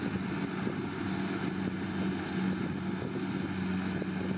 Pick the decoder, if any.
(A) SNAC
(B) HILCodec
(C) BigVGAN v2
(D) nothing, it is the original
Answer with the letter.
D